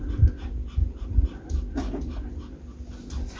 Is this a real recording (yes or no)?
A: yes